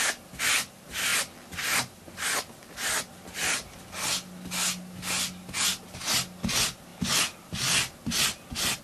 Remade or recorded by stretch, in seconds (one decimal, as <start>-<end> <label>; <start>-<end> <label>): 0.0-8.8 recorded